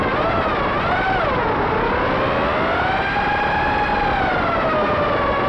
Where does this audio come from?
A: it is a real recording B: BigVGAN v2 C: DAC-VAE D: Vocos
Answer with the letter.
A